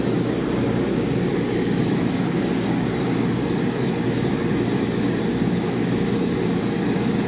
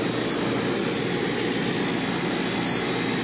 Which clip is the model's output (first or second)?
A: first